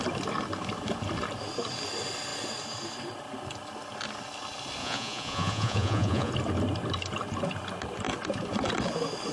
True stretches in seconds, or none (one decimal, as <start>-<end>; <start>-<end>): 0.0-4.8; 6.3-9.3